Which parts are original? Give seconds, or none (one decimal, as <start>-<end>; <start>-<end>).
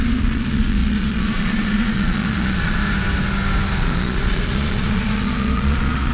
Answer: 2.8-3.8